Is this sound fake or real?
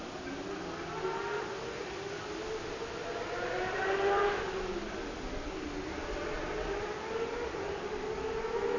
real